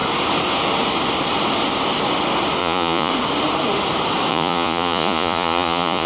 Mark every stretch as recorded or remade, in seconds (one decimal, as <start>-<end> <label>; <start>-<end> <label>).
0.0-2.6 recorded; 2.6-3.1 remade; 3.1-4.3 recorded; 4.3-6.1 remade